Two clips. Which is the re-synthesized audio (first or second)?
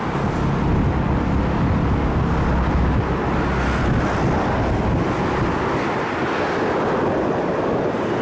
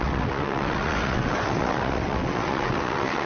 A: second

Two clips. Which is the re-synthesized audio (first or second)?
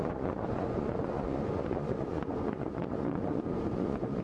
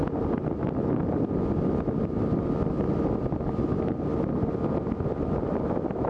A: first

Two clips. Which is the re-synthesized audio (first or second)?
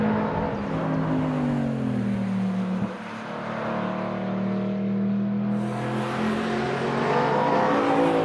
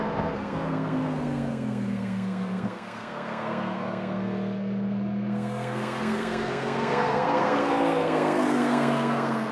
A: second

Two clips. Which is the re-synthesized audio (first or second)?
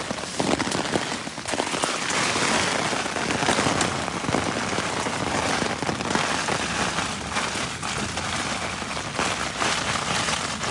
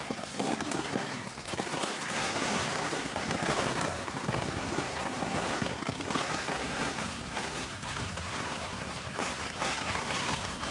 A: second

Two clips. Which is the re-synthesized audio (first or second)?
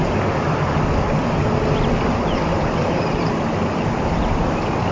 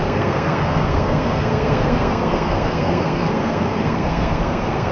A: second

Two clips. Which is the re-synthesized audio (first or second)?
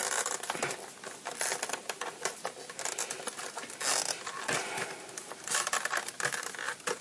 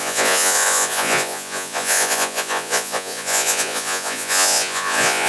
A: second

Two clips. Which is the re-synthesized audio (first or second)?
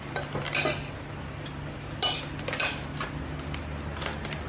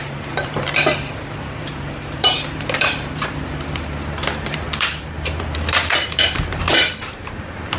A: second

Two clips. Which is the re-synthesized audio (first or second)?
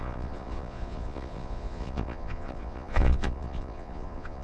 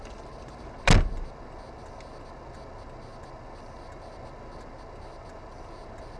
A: first